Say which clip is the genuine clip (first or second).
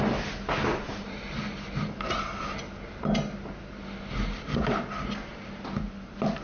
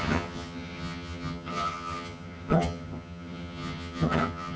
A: first